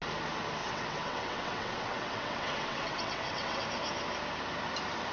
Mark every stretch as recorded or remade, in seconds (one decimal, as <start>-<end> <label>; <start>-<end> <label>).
0.0-0.6 recorded; 0.6-3.6 remade; 3.6-5.1 recorded